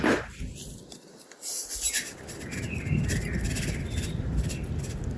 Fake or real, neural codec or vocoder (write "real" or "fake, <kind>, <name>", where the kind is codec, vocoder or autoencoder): fake, vocoder, BigVGAN v2